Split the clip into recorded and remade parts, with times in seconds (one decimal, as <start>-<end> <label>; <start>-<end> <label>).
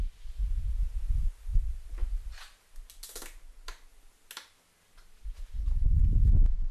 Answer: 0.0-6.7 recorded